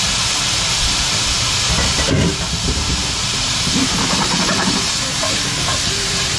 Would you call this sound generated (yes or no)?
yes